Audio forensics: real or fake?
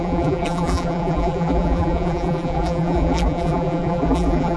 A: fake